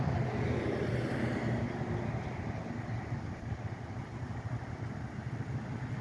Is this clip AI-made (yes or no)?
no